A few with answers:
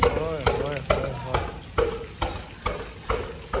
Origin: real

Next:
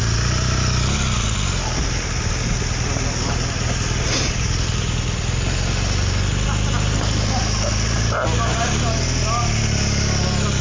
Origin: real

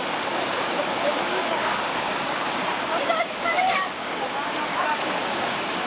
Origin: fake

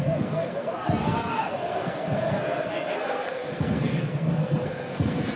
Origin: fake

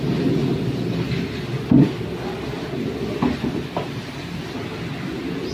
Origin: real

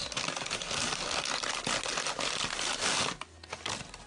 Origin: real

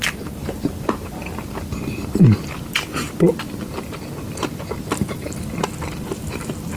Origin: real